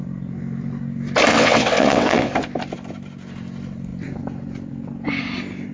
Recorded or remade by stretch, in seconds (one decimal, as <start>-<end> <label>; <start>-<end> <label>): 0.0-1.3 recorded; 1.3-2.3 remade; 2.3-5.7 recorded